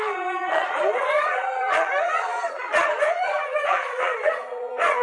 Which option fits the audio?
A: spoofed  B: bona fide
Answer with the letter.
A